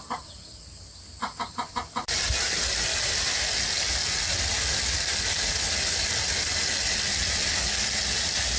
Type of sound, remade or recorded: recorded